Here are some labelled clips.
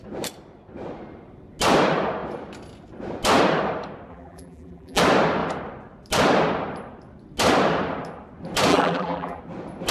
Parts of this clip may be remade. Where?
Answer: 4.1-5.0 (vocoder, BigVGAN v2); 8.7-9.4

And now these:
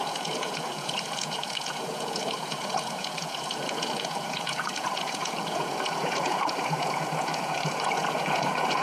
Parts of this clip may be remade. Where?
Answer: 0.0-8.8 (vocoder, Vocos)

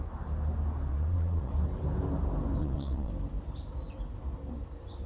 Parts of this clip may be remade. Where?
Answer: 0.9-1.5 (vocoder, Vocos); 2.6-3.1

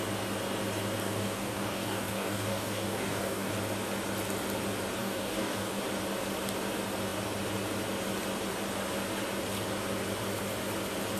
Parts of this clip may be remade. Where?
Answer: 1.0-3.5 (codec, DAC); 5.0-5.7